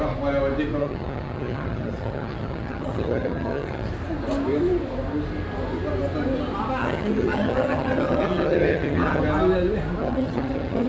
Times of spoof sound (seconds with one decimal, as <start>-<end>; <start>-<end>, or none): 0.8-3.9; 6.8-9.2; 10.0-10.9